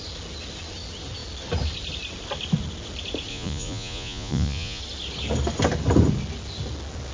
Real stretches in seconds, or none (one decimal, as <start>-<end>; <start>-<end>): 0.0-3.3; 4.8-7.1